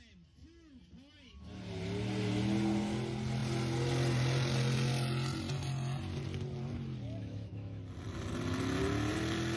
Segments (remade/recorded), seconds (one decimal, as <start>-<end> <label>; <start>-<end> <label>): 0.0-7.2 recorded; 7.2-7.8 remade; 7.8-9.6 recorded